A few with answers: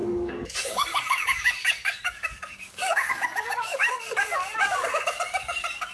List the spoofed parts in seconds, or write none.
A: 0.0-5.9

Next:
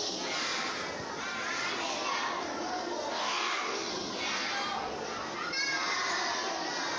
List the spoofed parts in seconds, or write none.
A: 3.1-3.9

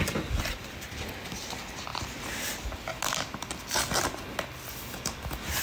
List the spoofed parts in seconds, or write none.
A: none